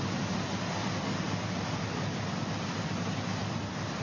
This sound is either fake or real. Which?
real